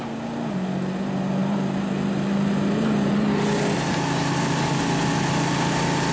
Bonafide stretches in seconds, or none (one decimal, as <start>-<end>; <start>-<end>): 0.0-6.1

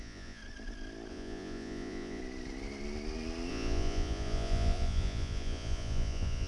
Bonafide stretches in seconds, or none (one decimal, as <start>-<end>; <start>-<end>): 0.4-1.1; 2.2-3.5

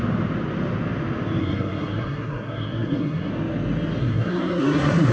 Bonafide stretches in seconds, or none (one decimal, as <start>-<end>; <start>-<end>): 0.0-1.4; 3.3-4.0